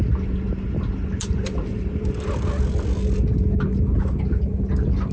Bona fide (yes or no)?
yes